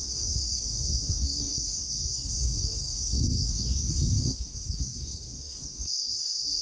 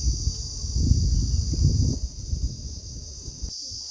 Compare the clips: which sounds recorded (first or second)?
second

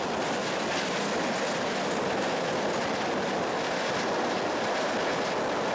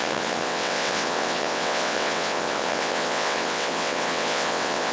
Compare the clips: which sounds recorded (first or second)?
first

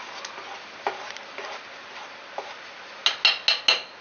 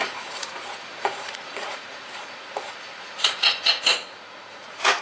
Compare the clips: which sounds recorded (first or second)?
first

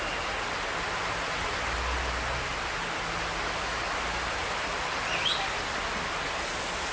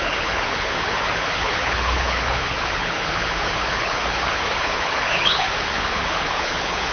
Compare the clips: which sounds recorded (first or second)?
first